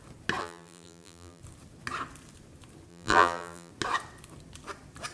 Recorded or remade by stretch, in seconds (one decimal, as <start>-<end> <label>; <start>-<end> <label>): 0.0-0.4 recorded; 0.4-1.4 remade; 1.4-2.9 recorded; 2.9-3.7 remade; 3.7-5.1 recorded